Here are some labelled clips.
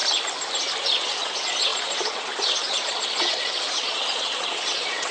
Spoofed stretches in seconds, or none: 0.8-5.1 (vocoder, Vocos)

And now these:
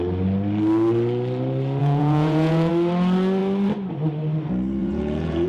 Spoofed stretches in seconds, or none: 1.8-2.7 (vocoder, Vocos); 4.8-5.5

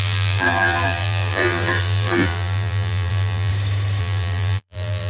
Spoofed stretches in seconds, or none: 0.0-3.5 (vocoder, BigVGAN v2); 4.0-5.1

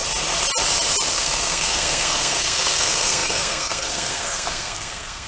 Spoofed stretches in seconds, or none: 1.1-5.3 (codec, SNAC)

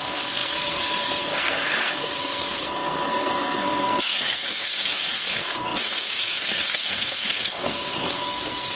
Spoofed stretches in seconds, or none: 0.0-8.8 (codec, SNAC)